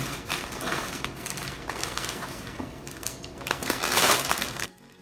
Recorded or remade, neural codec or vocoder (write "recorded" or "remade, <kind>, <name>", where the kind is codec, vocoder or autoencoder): remade, codec, SNAC